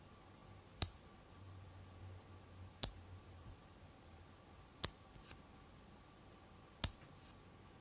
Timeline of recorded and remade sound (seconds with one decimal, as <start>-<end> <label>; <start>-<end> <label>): 0.0-7.8 recorded